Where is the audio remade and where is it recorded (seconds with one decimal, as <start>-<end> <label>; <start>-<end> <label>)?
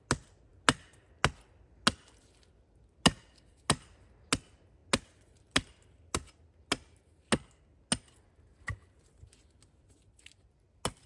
0.0-11.1 recorded